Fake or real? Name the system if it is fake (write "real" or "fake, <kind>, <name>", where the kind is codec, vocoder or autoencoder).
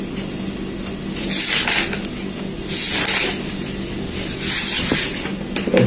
real